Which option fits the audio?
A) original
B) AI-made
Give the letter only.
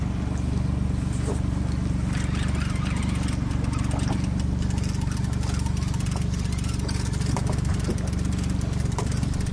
A